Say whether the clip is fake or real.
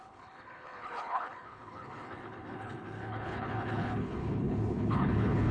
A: fake